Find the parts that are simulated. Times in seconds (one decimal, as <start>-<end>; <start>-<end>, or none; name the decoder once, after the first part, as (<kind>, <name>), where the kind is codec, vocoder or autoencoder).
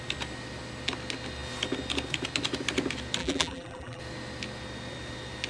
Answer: 3.2-4.0 (vocoder, BigVGAN v2)